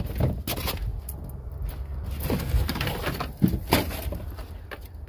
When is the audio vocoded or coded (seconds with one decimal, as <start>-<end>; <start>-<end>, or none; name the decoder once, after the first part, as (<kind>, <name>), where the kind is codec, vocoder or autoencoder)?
none